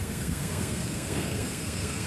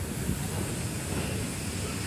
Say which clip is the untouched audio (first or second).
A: second